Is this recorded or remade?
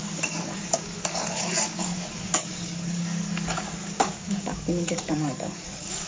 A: remade